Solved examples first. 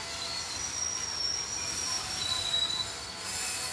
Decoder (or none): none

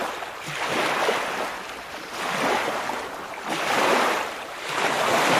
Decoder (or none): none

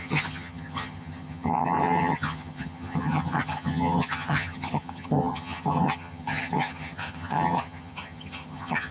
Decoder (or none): vocoder, HiFi-GAN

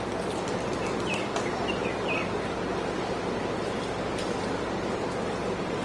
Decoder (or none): none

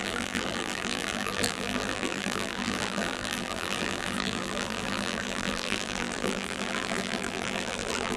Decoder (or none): vocoder, BigVGAN v2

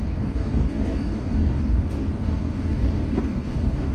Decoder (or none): codec, DAC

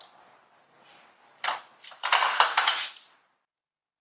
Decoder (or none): none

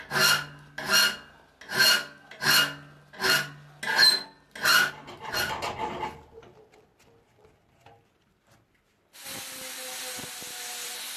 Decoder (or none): none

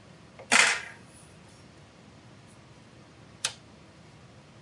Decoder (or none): vocoder, BigVGAN v2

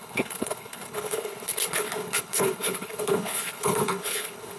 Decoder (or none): codec, HILCodec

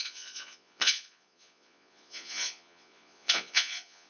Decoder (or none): vocoder, Vocos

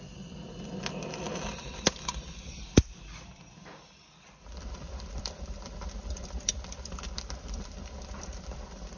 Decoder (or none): vocoder, BigVGAN v2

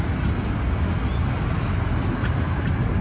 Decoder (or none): none